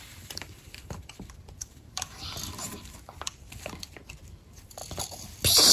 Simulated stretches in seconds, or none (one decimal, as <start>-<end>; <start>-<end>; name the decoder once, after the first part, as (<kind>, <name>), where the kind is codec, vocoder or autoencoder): 0.0-4.8 (vocoder, BigVGAN v2)

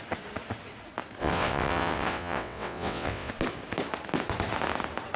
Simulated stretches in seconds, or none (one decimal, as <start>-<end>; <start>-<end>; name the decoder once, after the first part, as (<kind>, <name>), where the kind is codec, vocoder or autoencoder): 1.2-3.3 (vocoder, WaveNeXt)